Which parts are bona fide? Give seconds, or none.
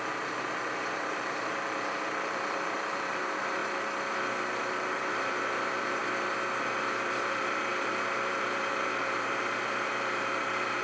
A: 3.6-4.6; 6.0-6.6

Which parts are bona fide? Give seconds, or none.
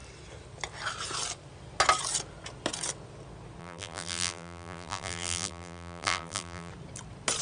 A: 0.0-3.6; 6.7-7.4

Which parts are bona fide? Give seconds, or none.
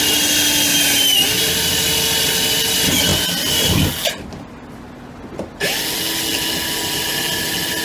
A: 0.0-7.8